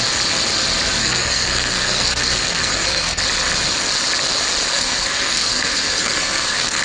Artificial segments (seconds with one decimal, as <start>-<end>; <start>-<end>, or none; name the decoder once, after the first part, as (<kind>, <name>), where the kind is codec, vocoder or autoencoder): 1.0-3.2 (codec, SNAC); 4.7-6.8